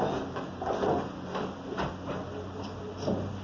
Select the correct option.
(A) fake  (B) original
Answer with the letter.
B